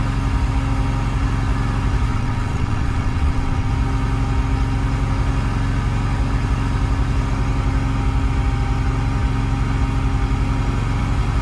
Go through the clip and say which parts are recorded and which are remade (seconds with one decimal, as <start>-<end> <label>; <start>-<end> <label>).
0.0-2.1 recorded; 2.1-3.7 remade; 3.7-11.4 recorded